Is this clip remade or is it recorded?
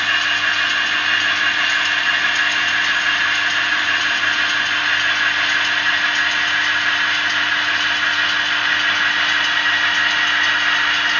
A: recorded